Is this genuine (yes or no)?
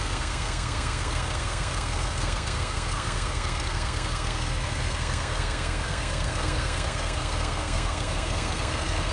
no